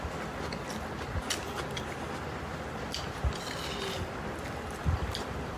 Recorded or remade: recorded